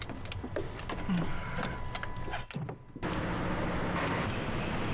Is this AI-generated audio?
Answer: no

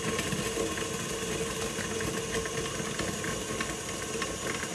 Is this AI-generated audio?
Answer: no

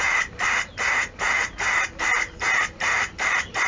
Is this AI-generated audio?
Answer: no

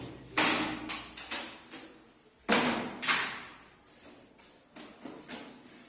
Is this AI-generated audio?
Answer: no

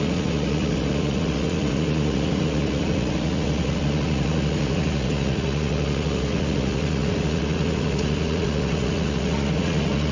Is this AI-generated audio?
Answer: yes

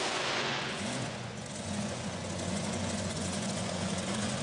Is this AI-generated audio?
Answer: yes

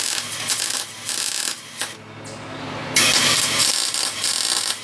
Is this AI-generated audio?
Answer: no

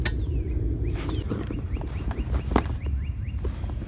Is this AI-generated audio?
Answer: no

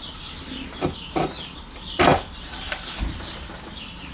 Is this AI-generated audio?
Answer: no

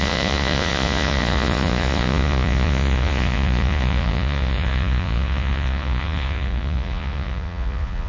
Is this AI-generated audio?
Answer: yes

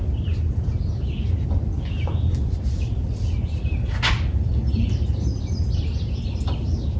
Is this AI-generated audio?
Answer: no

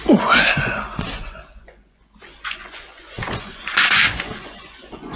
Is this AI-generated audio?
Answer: yes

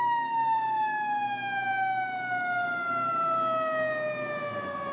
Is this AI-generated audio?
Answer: no